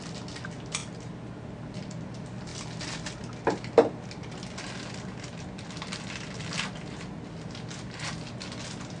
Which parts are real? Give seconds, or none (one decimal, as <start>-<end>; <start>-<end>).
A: 0.0-9.0